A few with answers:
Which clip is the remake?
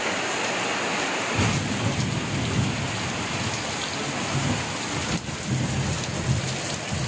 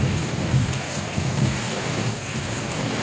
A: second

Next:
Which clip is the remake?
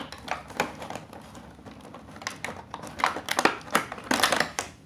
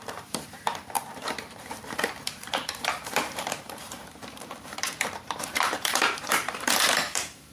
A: second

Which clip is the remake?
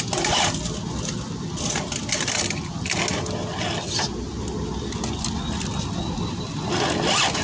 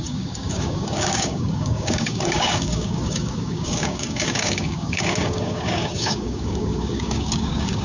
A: second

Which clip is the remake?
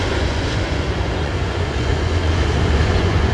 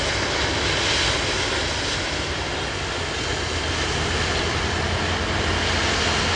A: first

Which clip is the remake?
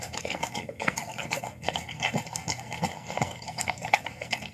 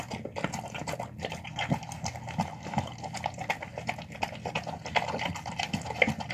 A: first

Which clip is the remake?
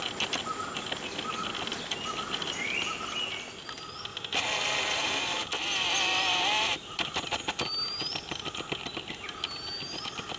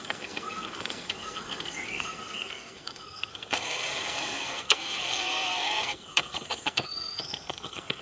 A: second